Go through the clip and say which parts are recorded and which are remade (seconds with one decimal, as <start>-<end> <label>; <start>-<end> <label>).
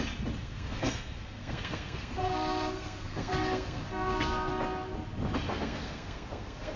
0.0-0.4 recorded; 0.4-4.5 remade; 4.5-5.5 recorded; 5.5-6.8 remade